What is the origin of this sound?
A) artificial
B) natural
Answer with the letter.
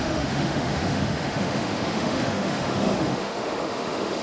A